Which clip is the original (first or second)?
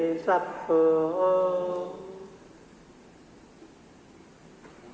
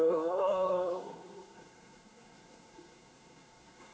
first